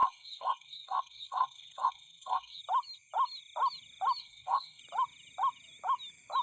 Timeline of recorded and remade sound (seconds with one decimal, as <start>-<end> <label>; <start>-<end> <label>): 0.0-2.6 remade; 2.6-4.2 recorded; 4.2-4.8 remade; 4.8-6.4 recorded